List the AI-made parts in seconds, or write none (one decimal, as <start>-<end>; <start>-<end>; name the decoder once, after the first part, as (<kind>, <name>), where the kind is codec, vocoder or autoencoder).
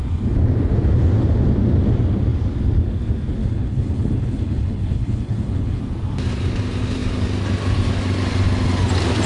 3.4-5.8 (codec, HILCodec)